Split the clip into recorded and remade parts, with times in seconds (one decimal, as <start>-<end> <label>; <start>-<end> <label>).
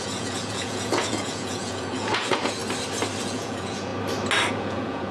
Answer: 0.0-2.6 remade; 2.6-3.2 recorded; 3.2-3.9 remade; 3.9-4.5 recorded; 4.5-5.1 remade